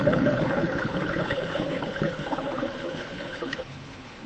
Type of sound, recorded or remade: remade